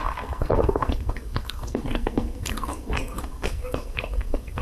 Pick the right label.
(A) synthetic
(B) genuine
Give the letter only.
A